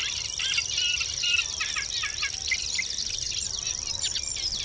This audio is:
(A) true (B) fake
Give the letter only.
A